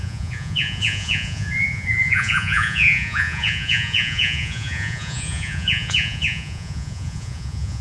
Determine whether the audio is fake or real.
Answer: fake